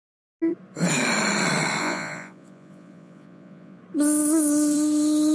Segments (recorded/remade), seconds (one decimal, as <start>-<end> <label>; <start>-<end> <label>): 0.0-1.8 recorded; 1.8-3.8 remade; 3.8-5.3 recorded